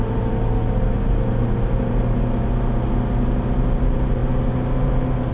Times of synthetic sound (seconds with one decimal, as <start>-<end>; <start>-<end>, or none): none